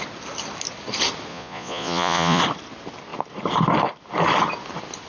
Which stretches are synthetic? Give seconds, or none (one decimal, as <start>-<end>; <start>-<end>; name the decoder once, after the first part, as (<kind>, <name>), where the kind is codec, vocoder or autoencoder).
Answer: 1.3-2.4 (vocoder, Vocos)